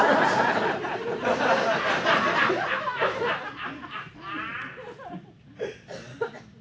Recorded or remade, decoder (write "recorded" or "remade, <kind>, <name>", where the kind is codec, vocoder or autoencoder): remade, vocoder, BigVGAN v2